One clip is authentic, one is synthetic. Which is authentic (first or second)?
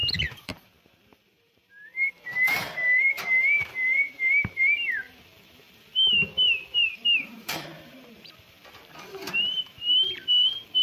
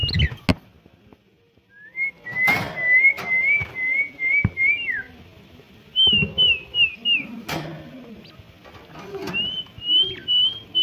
second